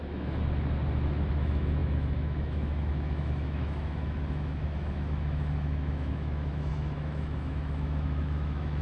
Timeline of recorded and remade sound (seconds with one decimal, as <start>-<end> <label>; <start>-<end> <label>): 0.0-0.4 remade; 0.4-1.3 recorded; 1.3-8.8 remade